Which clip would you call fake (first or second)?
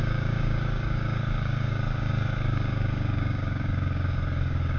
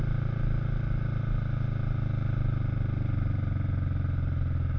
first